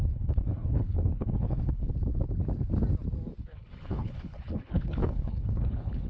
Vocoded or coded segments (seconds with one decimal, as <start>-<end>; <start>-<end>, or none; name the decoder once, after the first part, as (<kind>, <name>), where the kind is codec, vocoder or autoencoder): 0.0-1.9 (codec, HILCodec); 3.4-6.1